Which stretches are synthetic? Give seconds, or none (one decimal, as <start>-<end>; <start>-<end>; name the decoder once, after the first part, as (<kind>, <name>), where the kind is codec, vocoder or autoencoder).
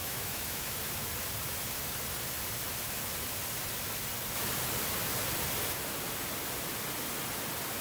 0.0-0.8 (autoencoder, DAC-VAE)